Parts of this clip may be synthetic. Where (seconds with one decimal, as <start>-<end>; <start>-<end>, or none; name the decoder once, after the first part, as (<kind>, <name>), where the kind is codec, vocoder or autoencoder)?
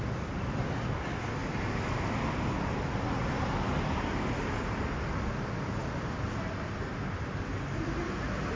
none